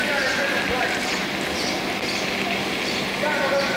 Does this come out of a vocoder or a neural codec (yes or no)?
no